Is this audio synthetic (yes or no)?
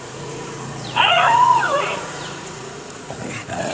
yes